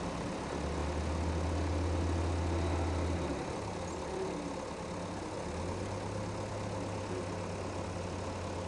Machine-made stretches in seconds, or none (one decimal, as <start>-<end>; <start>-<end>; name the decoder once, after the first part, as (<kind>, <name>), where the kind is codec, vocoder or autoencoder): none